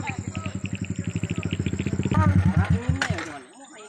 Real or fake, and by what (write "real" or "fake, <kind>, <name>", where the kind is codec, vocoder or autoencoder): real